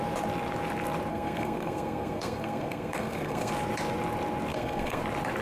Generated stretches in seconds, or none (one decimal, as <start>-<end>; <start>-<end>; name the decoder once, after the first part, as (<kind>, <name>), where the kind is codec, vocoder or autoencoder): 1.1-3.5 (codec, SNAC); 4.5-5.0